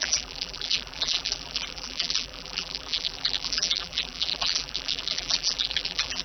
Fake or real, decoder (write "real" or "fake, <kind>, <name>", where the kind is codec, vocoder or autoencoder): fake, vocoder, BigVGAN v2